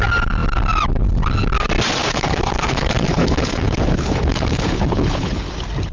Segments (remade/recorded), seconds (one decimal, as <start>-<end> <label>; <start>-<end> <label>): 0.0-2.0 recorded; 2.0-5.5 remade; 5.5-5.9 recorded